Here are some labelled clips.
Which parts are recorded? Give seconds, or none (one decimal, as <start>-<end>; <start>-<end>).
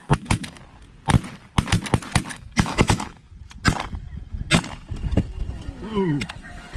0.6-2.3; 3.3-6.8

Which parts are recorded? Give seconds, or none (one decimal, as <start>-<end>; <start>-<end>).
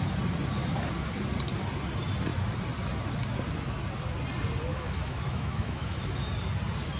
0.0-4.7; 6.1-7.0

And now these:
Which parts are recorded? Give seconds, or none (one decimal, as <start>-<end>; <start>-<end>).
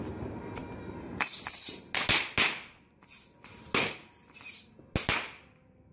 0.0-5.9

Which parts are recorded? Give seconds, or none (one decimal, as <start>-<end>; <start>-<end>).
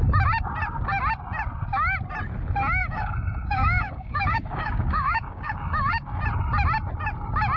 0.0-2.8; 5.9-7.6